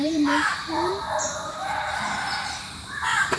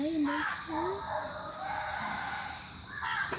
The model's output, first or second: first